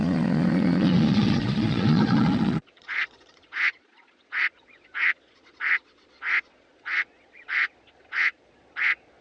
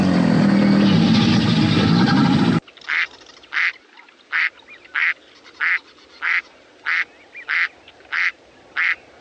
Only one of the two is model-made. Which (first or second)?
first